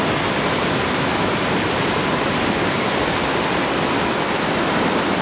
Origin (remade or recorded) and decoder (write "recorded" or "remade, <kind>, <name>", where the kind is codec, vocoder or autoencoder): recorded